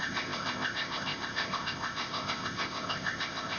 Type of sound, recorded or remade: remade